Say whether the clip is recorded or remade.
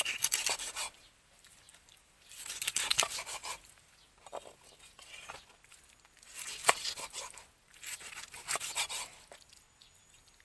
recorded